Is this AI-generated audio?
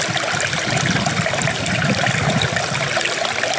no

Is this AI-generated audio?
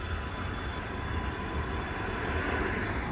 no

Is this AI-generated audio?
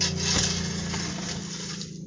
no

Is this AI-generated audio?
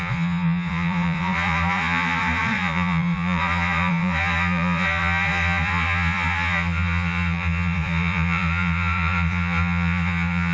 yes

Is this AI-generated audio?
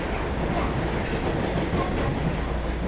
no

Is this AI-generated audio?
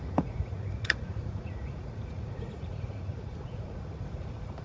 yes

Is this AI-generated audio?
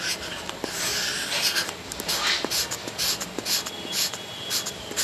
no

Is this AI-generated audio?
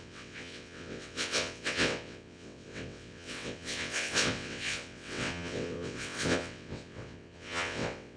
yes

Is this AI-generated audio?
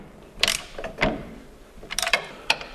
yes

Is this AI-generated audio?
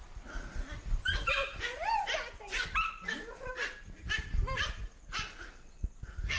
no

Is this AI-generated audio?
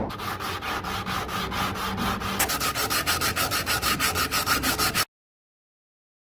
no